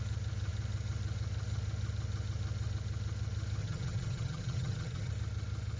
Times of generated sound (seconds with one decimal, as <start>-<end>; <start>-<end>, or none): 3.6-5.1